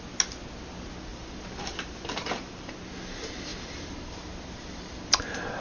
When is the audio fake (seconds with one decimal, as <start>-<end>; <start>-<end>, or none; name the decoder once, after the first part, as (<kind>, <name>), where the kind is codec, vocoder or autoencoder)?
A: 1.1-2.7 (vocoder, BigVGAN v2); 3.5-5.6